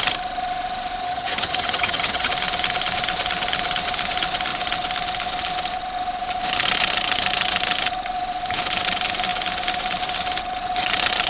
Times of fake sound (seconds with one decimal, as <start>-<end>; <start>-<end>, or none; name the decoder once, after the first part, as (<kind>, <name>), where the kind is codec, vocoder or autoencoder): 1.0-2.3 (vocoder, HiFi-GAN)